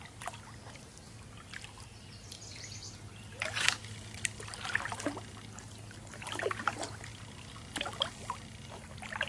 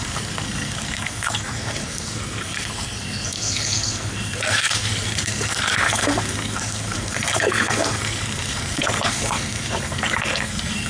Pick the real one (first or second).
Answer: first